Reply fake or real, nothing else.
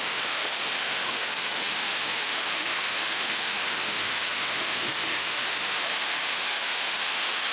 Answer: fake